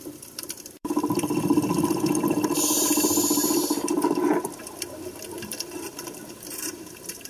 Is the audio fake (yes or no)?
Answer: yes